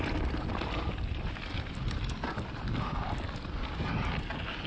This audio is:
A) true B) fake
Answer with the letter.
A